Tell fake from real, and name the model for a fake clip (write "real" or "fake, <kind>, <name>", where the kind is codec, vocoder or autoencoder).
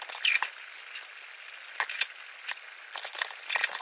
real